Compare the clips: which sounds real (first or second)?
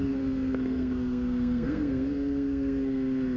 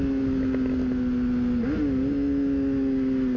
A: second